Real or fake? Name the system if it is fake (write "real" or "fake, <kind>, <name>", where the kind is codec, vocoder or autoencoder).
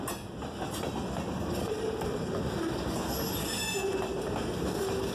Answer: real